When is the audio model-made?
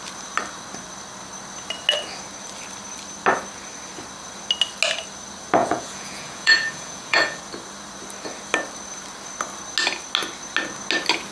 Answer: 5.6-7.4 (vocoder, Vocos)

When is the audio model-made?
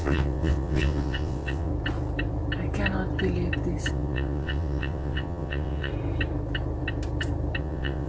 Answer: 0.0-1.7 (vocoder, WaveNeXt); 3.9-5.9; 7.6-8.1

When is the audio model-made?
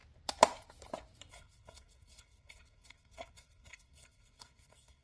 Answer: 1.3-5.0 (codec, SNAC)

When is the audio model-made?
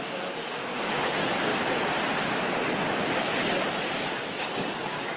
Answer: 0.0-1.5 (codec, DAC); 4.4-5.2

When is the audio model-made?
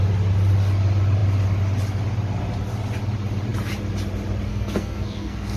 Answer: 4.5-5.6 (codec, SNAC)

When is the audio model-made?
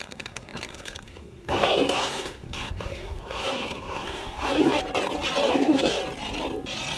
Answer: 0.0-4.8 (codec, SNAC); 5.5-6.0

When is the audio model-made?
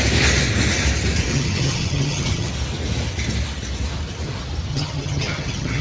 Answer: 1.3-2.5 (vocoder, HiFi-GAN); 4.7-5.8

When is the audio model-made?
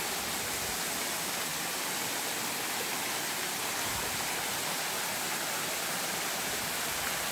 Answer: none